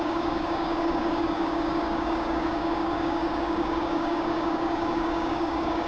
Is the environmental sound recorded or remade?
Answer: remade